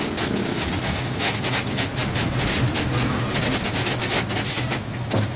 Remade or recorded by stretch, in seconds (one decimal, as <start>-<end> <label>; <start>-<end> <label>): 0.0-5.4 recorded